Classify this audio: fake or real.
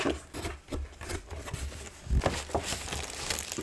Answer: real